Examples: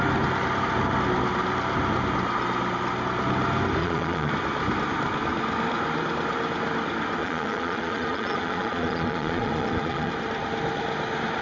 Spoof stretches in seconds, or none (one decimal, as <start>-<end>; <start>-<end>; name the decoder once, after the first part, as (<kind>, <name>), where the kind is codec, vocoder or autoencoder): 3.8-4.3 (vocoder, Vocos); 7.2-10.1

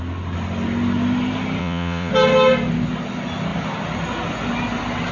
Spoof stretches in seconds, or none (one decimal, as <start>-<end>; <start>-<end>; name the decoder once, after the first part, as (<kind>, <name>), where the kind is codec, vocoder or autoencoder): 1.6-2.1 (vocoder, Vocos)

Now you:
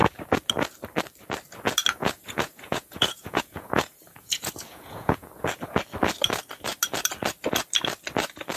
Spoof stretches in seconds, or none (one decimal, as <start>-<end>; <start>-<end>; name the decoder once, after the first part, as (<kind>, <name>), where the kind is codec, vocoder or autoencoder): 2.0-5.3 (vocoder, Vocos)

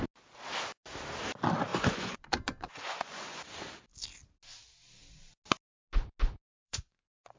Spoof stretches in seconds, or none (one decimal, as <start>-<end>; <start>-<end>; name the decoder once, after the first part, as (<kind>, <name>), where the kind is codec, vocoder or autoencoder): 1.7-3.4 (vocoder, Vocos); 6.6-7.4

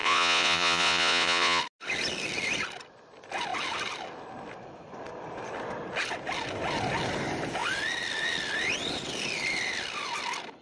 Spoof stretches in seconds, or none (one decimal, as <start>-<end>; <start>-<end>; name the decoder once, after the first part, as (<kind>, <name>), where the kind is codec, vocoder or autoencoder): 0.0-1.6 (vocoder, Vocos)

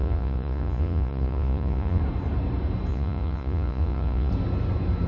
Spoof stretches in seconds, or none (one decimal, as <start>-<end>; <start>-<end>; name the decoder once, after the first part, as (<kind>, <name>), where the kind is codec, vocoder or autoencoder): 0.0-2.0 (vocoder, Vocos); 2.9-4.3

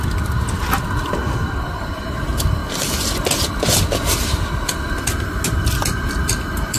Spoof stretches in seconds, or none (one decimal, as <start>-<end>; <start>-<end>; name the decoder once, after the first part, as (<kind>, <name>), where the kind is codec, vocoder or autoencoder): none

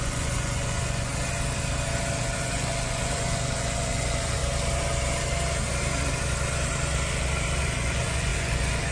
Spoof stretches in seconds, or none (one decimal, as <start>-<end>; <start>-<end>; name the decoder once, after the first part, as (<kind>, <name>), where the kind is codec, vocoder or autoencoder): 0.0-1.1 (vocoder, Vocos); 2.2-4.4; 7.6-8.9